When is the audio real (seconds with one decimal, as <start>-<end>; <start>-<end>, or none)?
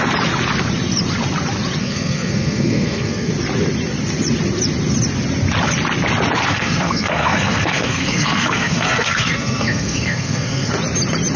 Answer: 0.0-1.8; 3.3-6.5; 10.7-11.4